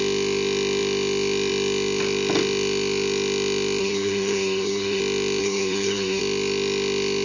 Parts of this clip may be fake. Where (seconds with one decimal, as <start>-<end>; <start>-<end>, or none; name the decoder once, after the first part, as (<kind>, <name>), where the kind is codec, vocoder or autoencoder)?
3.8-5.0 (codec, SNAC); 5.4-6.2